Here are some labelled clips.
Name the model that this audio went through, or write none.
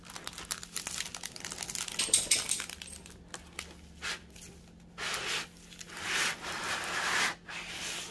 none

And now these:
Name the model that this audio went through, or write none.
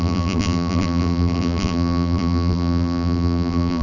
vocoder, BigVGAN v2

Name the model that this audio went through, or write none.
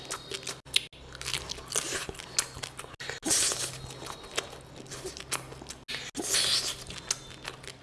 none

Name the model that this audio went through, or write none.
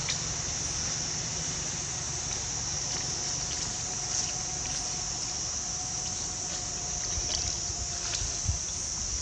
none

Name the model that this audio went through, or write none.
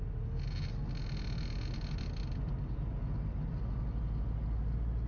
none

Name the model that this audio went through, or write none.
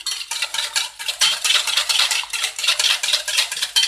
vocoder, BigVGAN v2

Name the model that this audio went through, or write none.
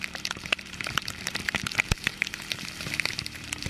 vocoder, BigVGAN v2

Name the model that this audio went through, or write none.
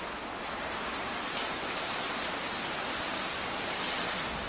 none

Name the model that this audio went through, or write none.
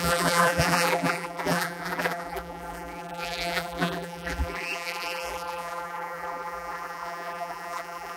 vocoder, BigVGAN v2